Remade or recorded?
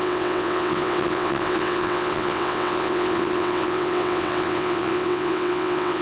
remade